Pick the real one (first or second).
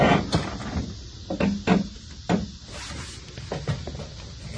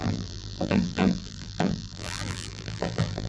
first